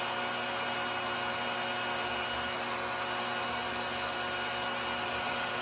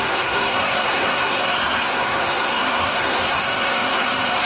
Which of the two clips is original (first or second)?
first